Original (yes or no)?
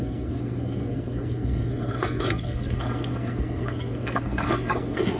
no